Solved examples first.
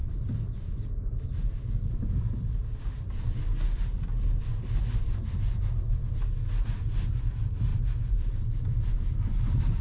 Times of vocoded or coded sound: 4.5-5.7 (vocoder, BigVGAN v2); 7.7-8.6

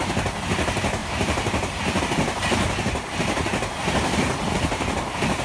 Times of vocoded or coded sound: 1.0-2.0 (vocoder, BigVGAN v2)

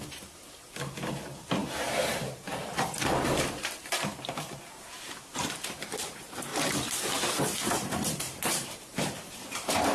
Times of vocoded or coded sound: 0.0-6.5 (vocoder, BigVGAN v2); 7.4-9.9

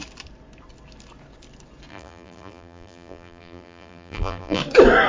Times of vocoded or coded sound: 1.9-4.6 (vocoder, BigVGAN v2)

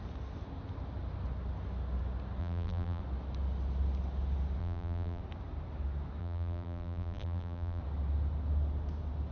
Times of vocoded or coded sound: 2.4-3.0 (vocoder, BigVGAN v2); 4.6-5.2; 6.2-7.8

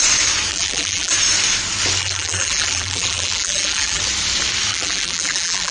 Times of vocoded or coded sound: 0.5-1.1 (vocoder, BigVGAN v2); 2.0-4.0; 4.7-5.7